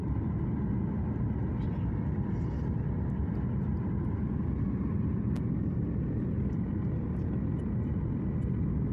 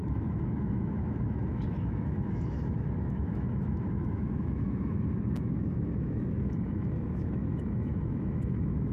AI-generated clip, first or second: second